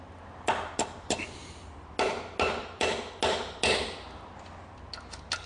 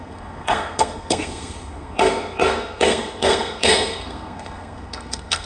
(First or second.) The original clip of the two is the first